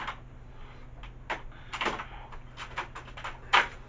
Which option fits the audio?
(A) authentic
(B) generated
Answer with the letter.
A